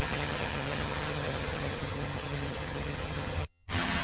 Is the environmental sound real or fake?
fake